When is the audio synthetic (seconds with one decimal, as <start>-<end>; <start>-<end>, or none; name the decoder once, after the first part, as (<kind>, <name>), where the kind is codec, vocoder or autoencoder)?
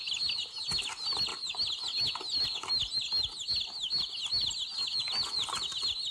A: none